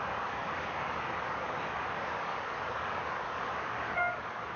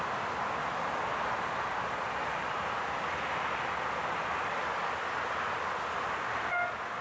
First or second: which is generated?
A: first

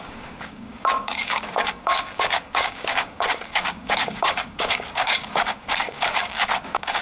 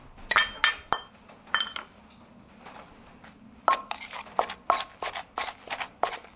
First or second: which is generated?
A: first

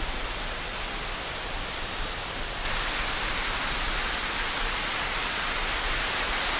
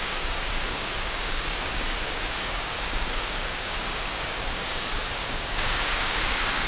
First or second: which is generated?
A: second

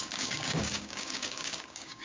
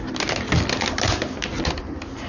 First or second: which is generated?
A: first